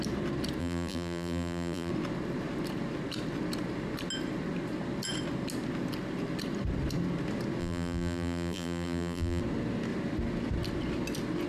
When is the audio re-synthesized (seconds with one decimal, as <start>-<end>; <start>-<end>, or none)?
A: 0.6-1.9; 7.6-9.4